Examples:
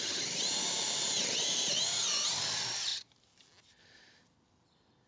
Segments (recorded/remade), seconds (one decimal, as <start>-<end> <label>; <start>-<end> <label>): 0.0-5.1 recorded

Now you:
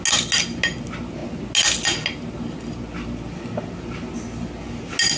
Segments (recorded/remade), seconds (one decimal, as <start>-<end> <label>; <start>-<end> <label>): 0.0-5.2 recorded

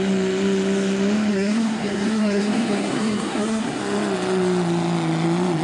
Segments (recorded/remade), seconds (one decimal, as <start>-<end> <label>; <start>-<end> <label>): 0.0-1.3 recorded; 1.3-3.8 remade; 3.8-5.6 recorded